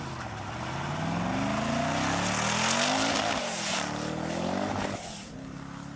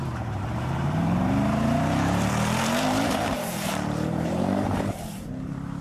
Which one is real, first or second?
first